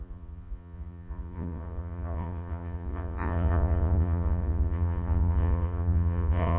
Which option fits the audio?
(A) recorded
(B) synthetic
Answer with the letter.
B